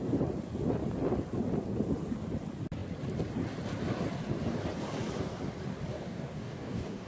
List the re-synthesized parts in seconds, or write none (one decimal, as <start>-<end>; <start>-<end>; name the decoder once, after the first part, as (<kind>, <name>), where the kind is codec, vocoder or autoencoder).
5.9-7.1 (codec, DAC)

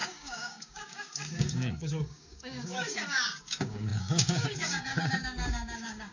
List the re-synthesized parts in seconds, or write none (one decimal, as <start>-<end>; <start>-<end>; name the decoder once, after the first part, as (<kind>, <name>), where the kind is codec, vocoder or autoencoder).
0.0-6.1 (codec, DAC)

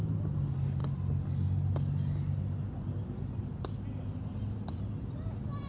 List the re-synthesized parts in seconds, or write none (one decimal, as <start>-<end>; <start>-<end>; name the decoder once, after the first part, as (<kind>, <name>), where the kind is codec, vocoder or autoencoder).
none

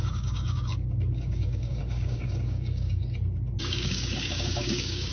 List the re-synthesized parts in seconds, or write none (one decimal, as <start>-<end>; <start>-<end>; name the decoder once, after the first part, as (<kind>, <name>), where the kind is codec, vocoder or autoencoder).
0.0-3.0 (codec, DAC); 3.6-5.1